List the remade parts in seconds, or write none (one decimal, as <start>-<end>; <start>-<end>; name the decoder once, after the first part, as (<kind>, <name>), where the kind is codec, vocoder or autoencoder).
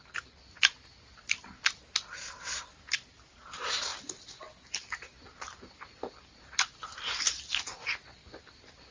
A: none